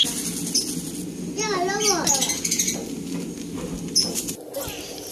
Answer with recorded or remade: recorded